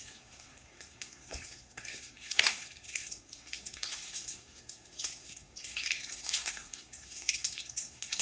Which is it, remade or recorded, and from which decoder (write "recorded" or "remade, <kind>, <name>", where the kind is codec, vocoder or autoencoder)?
remade, codec, SNAC